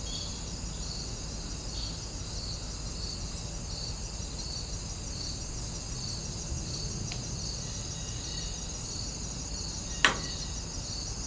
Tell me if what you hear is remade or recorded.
recorded